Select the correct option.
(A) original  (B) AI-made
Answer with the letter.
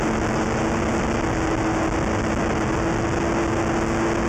A